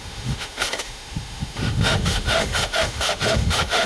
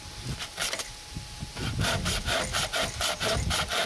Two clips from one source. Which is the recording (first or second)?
second